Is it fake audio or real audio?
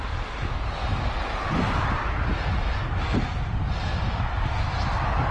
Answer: real